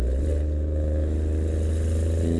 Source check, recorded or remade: recorded